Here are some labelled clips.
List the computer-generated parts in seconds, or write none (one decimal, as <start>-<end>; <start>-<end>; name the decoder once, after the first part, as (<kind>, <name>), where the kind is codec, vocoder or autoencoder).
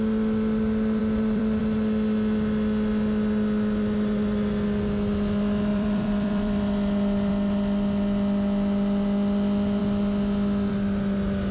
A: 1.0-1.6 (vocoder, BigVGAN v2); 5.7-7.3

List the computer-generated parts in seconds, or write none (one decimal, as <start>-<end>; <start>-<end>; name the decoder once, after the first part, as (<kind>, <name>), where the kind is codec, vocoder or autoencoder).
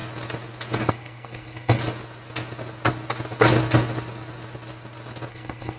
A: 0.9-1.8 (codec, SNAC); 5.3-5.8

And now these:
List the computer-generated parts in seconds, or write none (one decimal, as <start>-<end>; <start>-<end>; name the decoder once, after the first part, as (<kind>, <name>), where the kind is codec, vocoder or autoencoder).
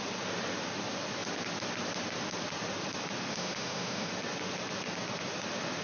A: 3.3-4.1 (autoencoder, DAC-VAE)